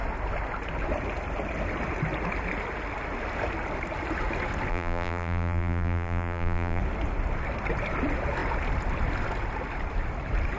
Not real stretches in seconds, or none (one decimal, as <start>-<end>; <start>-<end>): 4.7-6.8

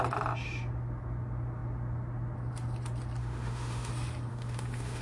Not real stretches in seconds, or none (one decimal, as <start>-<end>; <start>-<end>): 3.2-3.9; 4.3-5.0